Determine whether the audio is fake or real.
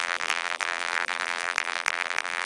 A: fake